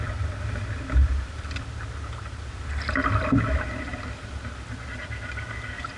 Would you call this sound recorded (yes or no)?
yes